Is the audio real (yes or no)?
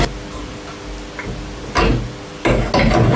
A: yes